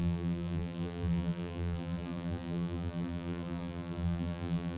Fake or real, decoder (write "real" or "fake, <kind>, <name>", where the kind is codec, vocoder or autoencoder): fake, vocoder, BigVGAN v2